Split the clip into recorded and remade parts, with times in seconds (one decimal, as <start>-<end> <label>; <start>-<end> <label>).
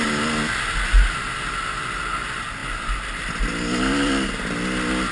0.0-5.1 recorded